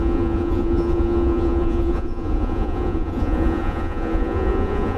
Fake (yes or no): yes